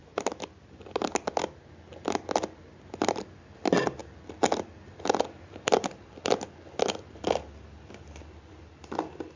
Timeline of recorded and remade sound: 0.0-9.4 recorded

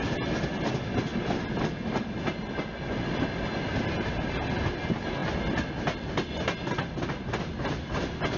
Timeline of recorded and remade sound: 0.0-8.4 recorded

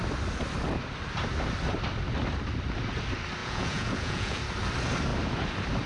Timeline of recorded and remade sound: 0.0-3.4 recorded; 3.4-4.4 remade; 4.4-5.9 recorded

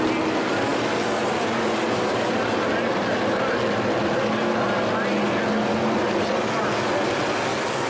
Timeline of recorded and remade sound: 0.0-7.9 recorded

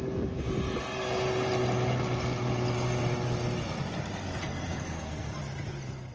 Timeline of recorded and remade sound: 0.0-4.4 recorded; 4.4-5.4 remade; 5.4-6.1 recorded

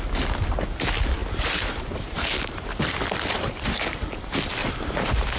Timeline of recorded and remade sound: 0.0-1.2 recorded; 1.2-2.7 remade; 2.7-4.6 recorded; 4.6-5.4 remade

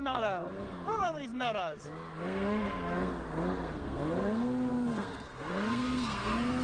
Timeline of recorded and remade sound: 0.0-6.6 remade

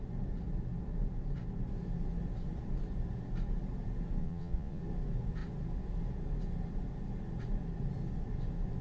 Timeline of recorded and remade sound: 0.0-4.2 recorded; 4.2-4.8 remade; 4.8-8.8 recorded